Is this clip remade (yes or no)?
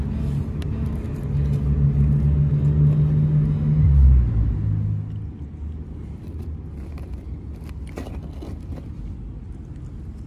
no